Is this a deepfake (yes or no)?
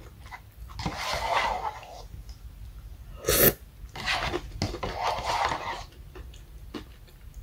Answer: no